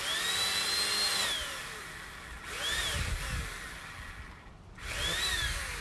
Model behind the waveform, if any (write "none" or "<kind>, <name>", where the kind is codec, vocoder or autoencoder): none